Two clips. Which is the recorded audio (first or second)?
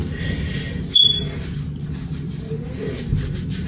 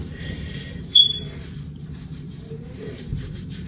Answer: first